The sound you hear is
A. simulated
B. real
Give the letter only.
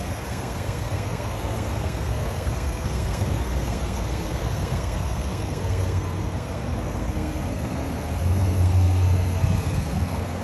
A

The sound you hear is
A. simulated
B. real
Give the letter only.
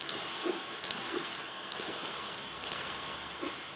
A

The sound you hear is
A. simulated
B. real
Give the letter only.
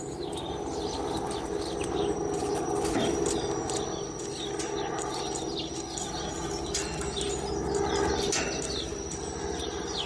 B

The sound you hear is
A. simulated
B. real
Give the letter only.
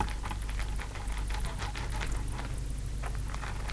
B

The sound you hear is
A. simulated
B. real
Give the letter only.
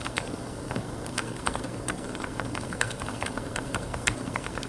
A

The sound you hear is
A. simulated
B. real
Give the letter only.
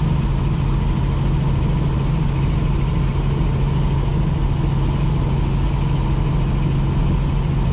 B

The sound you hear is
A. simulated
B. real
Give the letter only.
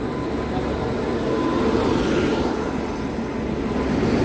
B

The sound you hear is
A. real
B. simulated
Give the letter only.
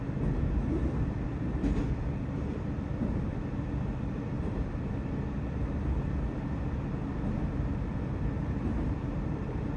B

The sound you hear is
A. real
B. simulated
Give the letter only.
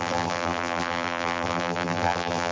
B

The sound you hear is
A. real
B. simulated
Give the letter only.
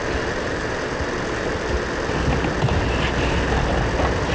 A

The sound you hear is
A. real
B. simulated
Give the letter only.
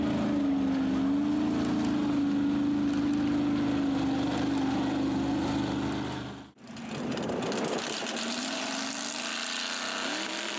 A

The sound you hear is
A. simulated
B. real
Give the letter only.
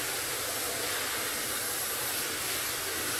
B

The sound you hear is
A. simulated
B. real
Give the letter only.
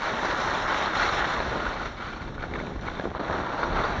B